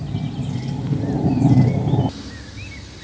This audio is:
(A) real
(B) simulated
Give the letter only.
A